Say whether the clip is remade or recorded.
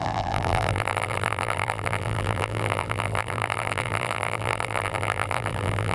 remade